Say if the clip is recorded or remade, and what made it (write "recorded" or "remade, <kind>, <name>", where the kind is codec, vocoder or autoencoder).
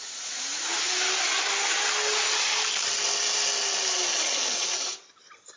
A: recorded